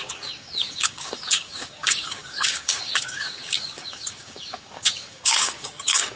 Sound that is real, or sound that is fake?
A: fake